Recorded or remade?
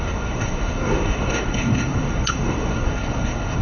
remade